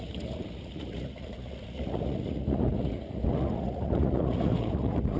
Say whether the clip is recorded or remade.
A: remade